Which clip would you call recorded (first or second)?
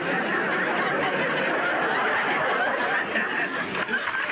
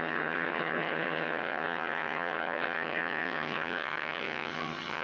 first